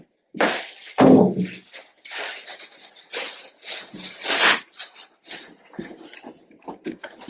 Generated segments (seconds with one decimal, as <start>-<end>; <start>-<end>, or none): none